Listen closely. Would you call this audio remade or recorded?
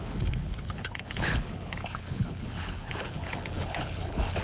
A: remade